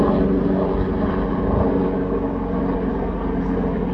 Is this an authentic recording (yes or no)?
yes